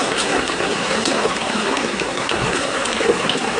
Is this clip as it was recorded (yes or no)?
no